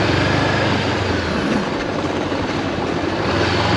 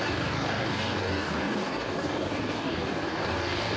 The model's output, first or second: second